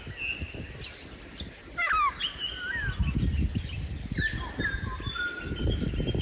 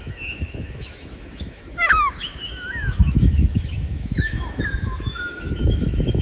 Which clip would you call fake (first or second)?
second